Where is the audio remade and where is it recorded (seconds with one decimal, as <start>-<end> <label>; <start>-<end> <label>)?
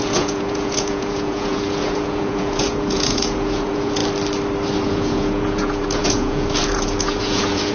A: 0.0-4.0 remade; 4.0-4.8 recorded; 4.8-7.7 remade